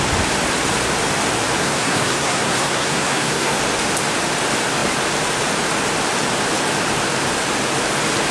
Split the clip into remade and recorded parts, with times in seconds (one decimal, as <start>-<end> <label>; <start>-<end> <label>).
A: 0.0-1.6 recorded; 1.6-3.6 remade; 3.6-8.3 recorded